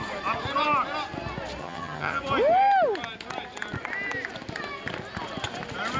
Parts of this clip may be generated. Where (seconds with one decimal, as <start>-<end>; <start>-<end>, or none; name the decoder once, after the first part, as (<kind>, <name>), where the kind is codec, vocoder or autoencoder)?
1.6-2.2 (vocoder, HiFi-GAN)